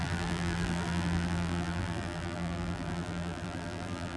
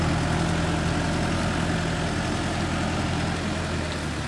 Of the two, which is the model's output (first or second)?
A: first